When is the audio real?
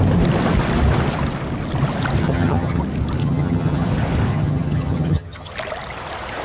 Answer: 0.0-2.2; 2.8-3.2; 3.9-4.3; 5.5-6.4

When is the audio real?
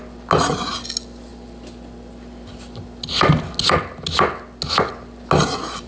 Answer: 0.0-5.9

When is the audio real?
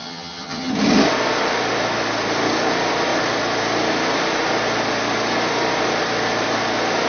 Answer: 0.7-7.1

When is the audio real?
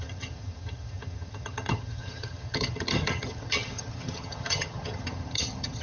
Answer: none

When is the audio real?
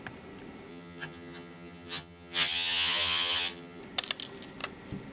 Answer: 0.0-0.7; 3.8-5.1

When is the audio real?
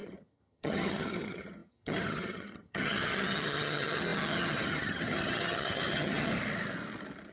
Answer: 6.3-7.3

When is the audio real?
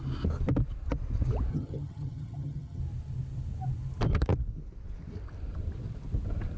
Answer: 0.0-1.5; 2.8-6.6